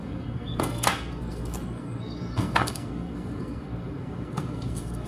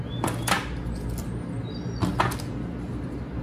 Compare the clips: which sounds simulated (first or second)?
first